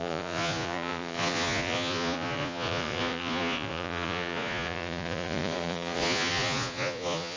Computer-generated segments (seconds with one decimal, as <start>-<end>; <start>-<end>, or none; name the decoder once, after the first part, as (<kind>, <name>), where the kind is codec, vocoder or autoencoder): 0.0-7.4 (vocoder, Vocos)

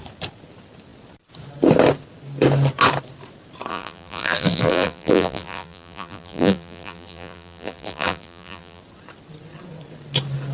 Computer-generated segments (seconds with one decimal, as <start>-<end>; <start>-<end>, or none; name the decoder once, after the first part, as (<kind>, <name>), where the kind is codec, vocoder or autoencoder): 3.7-8.8 (vocoder, BigVGAN v2)

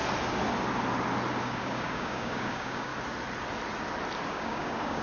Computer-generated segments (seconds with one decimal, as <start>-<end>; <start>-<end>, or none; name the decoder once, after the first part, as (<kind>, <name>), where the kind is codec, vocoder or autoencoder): 1.4-2.9 (codec, DAC); 4.3-5.0

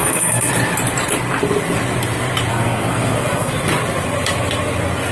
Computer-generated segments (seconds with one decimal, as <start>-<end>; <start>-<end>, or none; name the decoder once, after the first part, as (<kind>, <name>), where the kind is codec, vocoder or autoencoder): 0.0-0.5 (codec, SNAC); 2.5-3.5

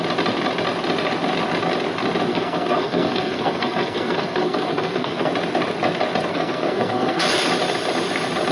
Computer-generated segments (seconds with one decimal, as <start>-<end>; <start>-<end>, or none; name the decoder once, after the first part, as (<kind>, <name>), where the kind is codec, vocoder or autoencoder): 2.3-5.3 (codec, SNAC); 6.3-7.3

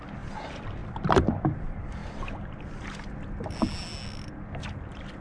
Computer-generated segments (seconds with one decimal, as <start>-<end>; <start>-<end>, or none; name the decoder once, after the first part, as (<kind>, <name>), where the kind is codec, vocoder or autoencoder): 0.8-1.6 (vocoder, BigVGAN v2)